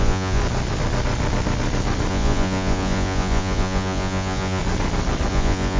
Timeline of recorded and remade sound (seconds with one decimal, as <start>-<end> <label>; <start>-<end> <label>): 0.0-0.4 remade; 0.4-2.1 recorded; 2.1-4.6 remade; 4.6-5.3 recorded; 5.3-5.8 remade